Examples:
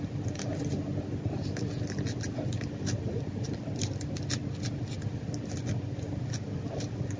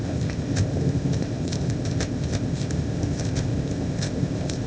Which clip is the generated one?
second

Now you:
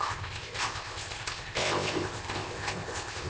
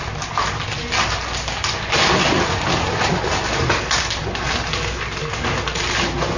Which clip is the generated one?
first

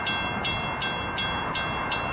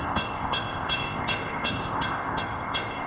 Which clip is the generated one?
second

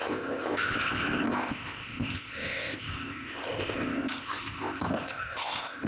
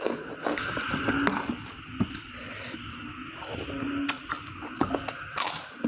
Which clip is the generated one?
first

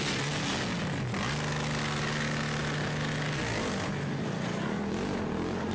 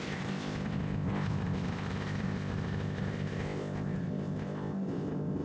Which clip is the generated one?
second